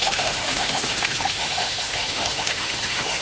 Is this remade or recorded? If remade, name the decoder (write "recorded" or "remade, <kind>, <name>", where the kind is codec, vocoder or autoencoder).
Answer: remade, autoencoder, DAC-VAE